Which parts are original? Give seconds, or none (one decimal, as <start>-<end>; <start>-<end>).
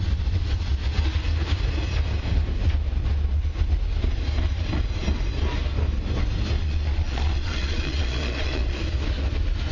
0.0-6.6; 8.8-9.7